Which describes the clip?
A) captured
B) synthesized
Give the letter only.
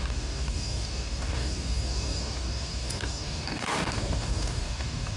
B